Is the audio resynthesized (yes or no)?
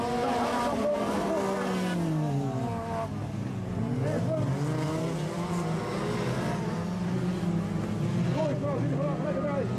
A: no